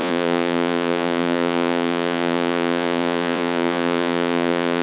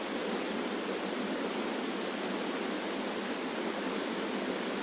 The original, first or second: second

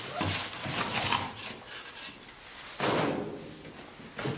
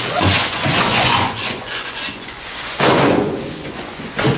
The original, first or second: first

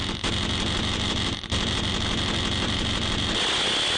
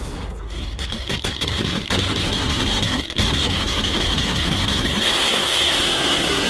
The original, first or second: first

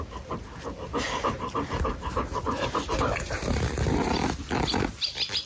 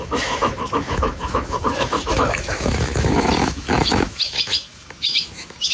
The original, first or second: first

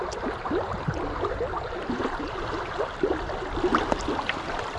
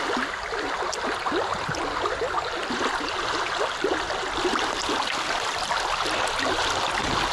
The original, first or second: second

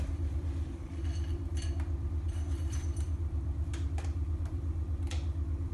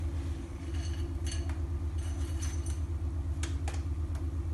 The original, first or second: second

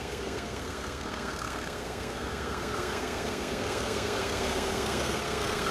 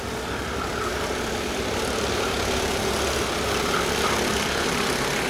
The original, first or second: second